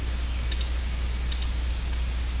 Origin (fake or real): real